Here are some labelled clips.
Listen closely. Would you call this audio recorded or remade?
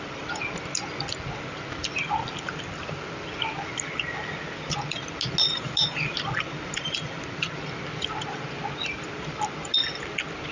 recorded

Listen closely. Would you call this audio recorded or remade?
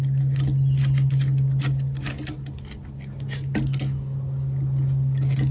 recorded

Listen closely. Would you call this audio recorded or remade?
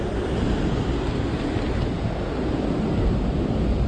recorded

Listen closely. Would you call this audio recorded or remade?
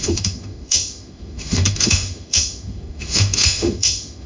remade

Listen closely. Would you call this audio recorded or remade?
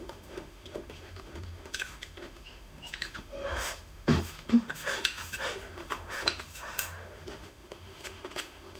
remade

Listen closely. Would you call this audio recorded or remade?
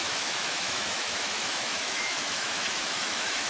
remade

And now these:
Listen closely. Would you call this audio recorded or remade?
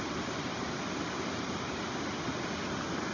recorded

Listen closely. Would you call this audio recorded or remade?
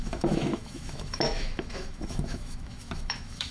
remade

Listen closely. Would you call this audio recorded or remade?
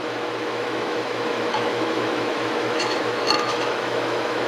remade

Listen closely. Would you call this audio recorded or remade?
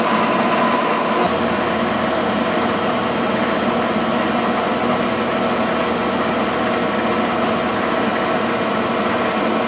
recorded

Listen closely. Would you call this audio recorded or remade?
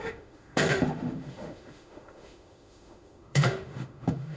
remade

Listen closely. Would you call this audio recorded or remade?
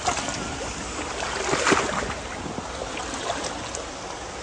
recorded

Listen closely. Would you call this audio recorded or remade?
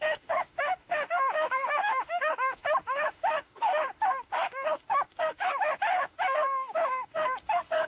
remade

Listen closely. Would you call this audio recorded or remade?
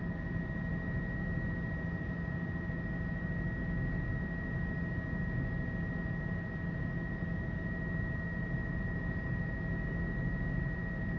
recorded